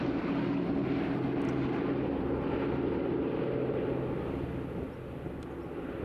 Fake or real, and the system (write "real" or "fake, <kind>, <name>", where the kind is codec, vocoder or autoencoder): real